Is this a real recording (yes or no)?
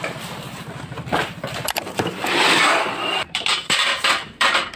no